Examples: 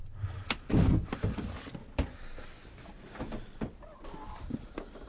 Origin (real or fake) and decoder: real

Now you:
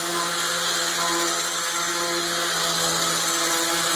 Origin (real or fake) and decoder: real